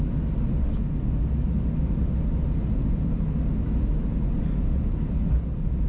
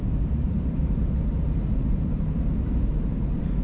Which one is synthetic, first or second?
second